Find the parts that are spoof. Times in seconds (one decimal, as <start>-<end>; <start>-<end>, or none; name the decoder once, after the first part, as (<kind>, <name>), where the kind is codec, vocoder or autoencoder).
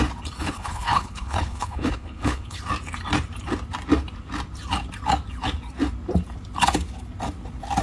0.4-2.6 (codec, HILCodec)